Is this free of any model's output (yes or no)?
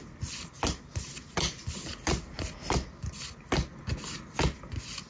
yes